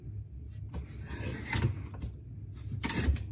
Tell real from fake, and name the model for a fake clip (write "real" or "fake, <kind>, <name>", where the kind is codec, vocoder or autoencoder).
real